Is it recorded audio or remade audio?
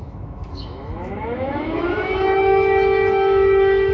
remade